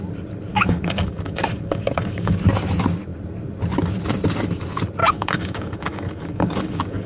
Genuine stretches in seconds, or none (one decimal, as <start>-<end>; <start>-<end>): 0.0-0.5; 2.4-5.0